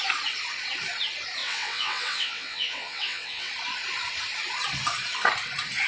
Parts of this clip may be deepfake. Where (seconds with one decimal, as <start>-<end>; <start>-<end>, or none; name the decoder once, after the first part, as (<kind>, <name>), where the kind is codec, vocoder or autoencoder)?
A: 1.4-3.5 (vocoder, WaveNeXt)